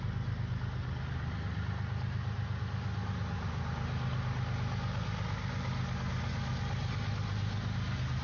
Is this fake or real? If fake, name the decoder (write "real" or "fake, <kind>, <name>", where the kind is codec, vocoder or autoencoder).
real